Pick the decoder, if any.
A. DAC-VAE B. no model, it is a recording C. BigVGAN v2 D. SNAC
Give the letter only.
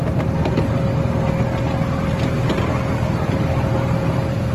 B